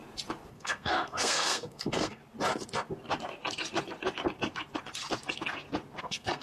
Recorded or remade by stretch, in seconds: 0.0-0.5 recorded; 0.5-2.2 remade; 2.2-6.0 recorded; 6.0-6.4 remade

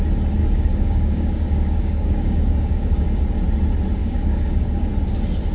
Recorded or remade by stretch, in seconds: 0.0-0.4 recorded; 0.4-3.2 remade; 3.2-4.0 recorded; 4.0-4.9 remade; 4.9-5.5 recorded

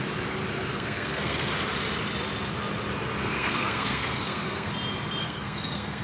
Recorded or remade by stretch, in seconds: 0.0-0.7 recorded; 0.7-1.5 remade; 1.5-3.2 recorded; 3.2-4.7 remade; 4.7-5.2 recorded; 5.2-6.0 remade

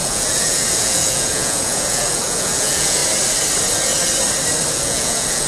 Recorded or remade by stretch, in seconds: 0.0-3.0 remade; 3.0-4.7 recorded; 4.7-5.5 remade

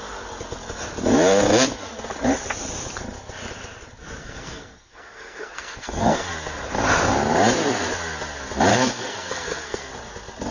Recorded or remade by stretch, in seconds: 0.0-4.2 recorded; 4.2-6.3 remade; 6.3-8.7 recorded; 8.7-9.9 remade; 9.9-10.5 recorded

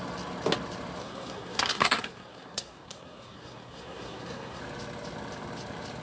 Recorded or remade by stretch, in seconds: 0.0-1.0 recorded; 1.0-4.6 remade; 4.6-6.0 recorded